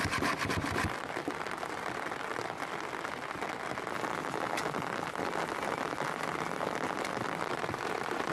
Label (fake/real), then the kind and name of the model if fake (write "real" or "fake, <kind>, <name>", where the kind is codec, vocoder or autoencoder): real